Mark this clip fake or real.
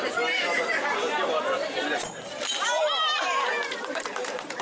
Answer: fake